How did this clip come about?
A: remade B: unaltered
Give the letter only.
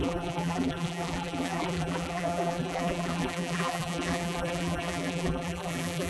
A